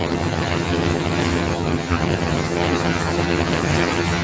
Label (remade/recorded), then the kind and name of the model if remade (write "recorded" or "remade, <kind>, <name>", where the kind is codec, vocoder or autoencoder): remade, vocoder, HiFi-GAN